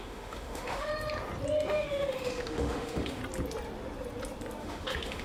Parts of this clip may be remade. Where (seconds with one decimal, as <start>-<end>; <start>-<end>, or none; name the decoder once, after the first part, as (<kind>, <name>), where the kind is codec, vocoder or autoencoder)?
0.0-0.9 (autoencoder, DAC-VAE); 1.7-3.2; 4.6-5.2